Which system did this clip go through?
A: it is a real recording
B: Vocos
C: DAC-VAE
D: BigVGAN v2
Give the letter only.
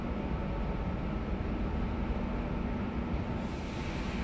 A